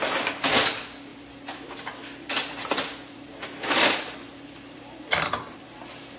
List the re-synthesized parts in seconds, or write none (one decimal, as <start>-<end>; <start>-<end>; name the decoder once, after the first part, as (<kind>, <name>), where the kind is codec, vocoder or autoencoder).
1.1-4.8 (vocoder, BigVGAN v2)